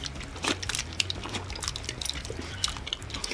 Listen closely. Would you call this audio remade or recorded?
recorded